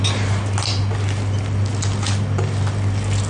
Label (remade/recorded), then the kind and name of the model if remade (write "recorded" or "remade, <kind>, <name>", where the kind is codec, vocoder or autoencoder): recorded